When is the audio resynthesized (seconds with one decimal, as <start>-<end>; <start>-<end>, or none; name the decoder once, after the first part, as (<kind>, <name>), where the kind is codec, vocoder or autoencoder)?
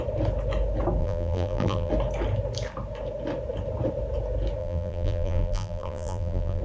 1.0-1.9 (vocoder, BigVGAN v2); 4.6-6.6